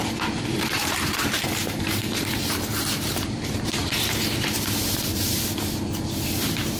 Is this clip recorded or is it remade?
remade